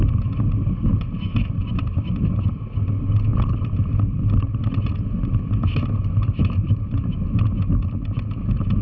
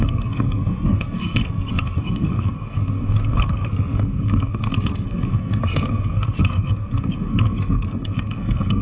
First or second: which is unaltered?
first